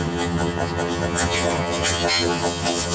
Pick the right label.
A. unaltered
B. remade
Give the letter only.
B